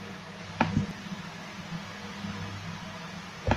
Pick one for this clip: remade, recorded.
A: recorded